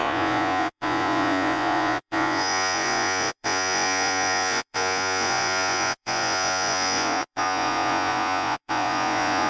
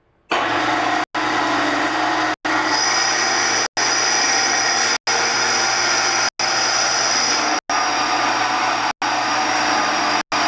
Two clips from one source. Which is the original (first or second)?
second